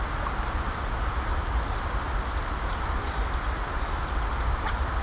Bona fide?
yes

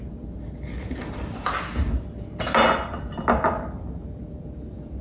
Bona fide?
yes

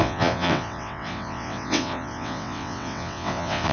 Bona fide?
no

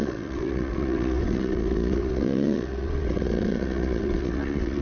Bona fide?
no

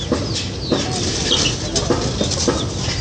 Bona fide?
yes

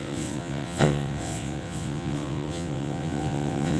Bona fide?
no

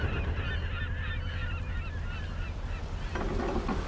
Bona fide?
yes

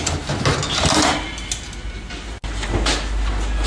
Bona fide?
yes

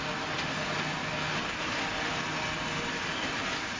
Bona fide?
yes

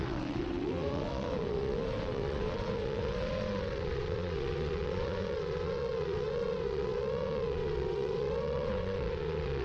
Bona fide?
no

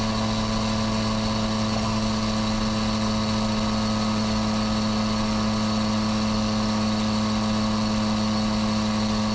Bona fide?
yes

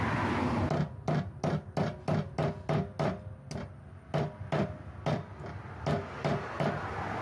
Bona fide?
yes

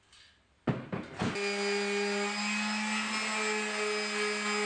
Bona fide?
yes